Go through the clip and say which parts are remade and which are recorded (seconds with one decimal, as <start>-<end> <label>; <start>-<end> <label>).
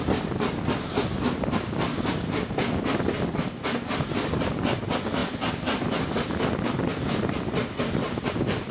0.0-8.7 recorded